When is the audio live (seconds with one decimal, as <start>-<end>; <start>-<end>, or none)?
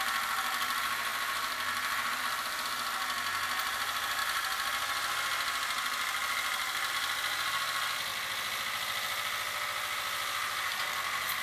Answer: 0.0-1.1; 2.2-8.1